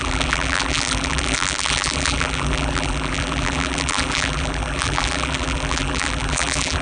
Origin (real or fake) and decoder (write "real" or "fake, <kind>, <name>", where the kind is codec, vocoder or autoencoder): fake, vocoder, BigVGAN v2